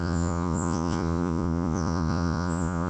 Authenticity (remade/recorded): remade